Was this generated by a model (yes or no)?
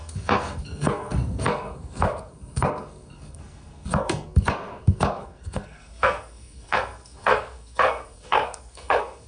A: yes